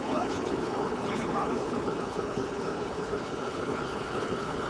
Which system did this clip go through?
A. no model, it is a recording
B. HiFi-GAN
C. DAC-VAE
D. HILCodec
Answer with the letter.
D